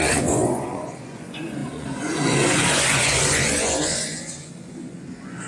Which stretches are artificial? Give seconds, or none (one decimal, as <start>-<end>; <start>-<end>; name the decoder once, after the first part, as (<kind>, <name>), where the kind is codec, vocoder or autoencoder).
0.0-5.5 (vocoder, Vocos)